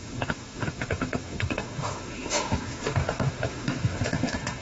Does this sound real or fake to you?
fake